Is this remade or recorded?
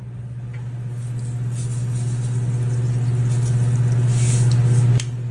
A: recorded